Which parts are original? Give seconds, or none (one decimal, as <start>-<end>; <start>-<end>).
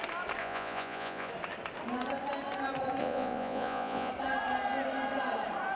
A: 0.0-0.4; 1.3-3.0; 4.1-5.8